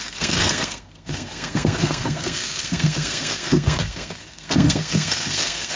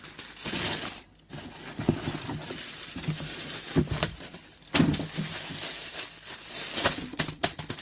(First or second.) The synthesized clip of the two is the first